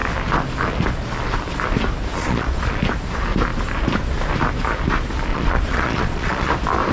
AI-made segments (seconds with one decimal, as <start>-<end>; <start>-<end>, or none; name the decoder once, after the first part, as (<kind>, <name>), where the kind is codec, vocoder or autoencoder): 2.2-2.8 (vocoder, Vocos); 5.3-6.5